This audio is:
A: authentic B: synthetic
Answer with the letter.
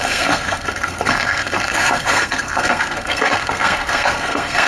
B